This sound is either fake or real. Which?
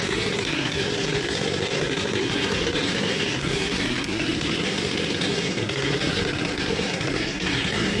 fake